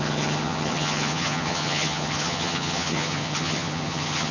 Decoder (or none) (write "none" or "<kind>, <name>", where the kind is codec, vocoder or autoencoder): vocoder, HiFi-GAN